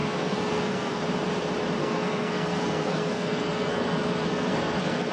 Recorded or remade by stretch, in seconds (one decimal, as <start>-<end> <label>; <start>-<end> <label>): 0.0-1.0 remade; 1.0-1.8 recorded; 1.8-5.1 remade